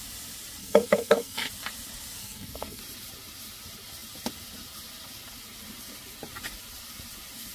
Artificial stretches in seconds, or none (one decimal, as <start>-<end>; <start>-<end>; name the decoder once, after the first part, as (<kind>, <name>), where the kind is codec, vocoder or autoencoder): 0.6-1.5 (codec, SNAC); 2.2-2.8